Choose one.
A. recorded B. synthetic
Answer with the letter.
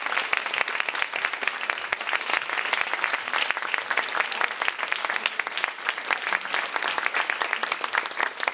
A